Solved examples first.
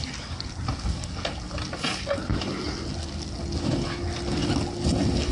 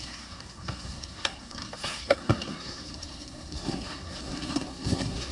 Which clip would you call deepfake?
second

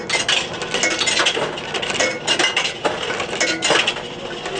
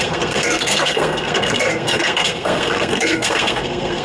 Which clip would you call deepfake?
second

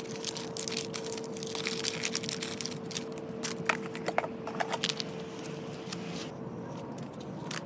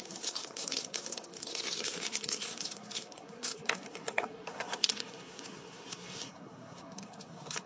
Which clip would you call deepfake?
second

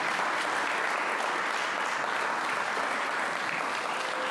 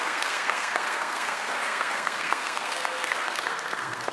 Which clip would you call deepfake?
second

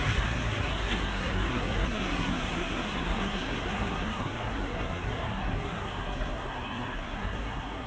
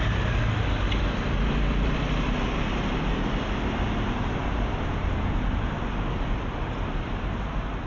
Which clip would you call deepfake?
first